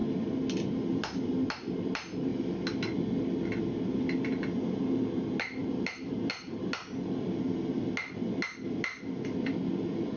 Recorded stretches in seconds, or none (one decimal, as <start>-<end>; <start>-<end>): 0.0-10.2